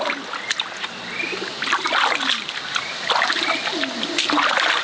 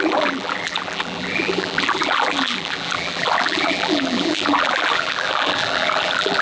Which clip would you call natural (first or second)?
first